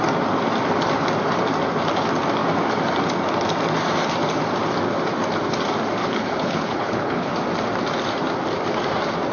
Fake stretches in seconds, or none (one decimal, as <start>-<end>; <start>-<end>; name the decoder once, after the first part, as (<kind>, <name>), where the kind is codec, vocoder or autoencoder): 6.0-7.3 (codec, HILCodec)